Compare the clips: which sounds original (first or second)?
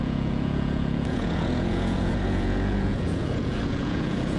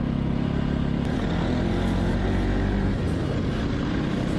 second